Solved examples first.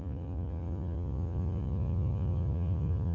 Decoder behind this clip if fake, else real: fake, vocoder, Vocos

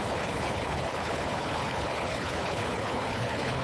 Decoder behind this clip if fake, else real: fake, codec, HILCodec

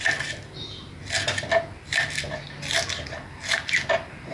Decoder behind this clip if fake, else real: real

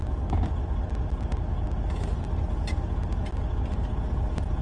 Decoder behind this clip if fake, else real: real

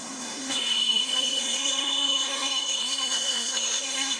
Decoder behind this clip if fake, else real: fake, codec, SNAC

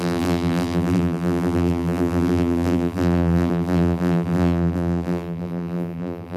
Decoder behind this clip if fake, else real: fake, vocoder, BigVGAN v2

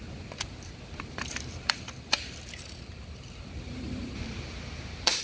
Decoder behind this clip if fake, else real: fake, vocoder, BigVGAN v2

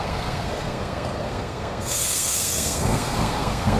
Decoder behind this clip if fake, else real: fake, codec, SNAC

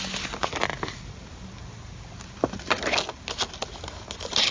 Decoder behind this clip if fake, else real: real